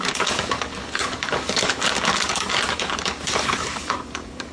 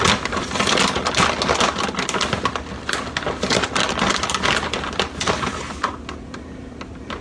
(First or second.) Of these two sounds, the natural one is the second